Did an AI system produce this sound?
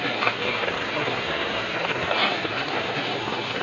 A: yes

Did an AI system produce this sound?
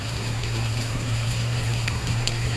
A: yes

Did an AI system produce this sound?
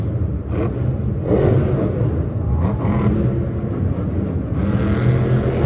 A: no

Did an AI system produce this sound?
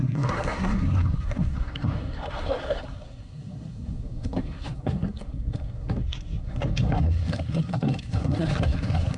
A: yes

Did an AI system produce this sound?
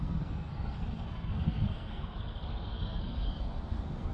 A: yes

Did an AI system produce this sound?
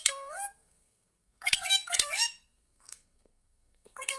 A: yes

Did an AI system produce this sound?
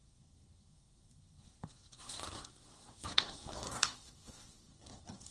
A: yes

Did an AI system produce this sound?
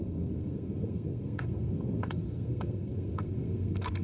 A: yes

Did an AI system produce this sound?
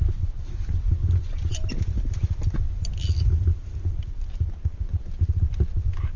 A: no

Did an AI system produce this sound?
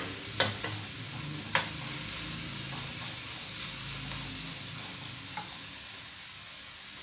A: no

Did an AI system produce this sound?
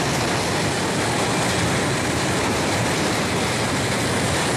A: no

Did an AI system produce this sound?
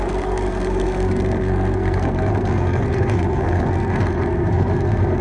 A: yes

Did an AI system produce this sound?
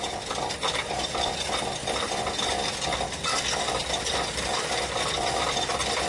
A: no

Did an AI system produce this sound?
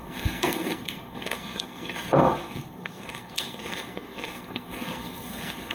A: yes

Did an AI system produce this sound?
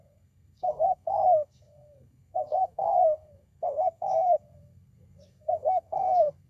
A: yes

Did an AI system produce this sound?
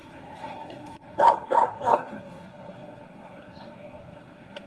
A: yes